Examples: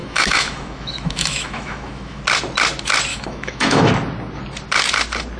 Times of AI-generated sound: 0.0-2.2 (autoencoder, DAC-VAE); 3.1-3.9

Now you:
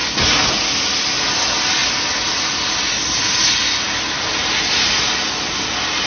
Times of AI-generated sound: none

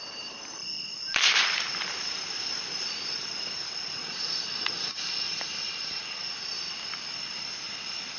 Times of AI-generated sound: 4.9-6.0 (vocoder, BigVGAN v2)